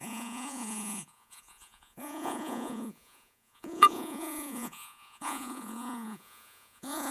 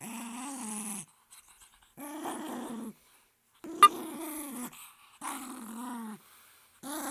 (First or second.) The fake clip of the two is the first